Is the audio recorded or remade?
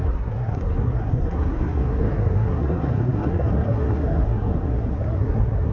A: remade